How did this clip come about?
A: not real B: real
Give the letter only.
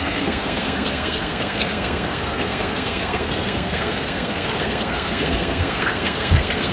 A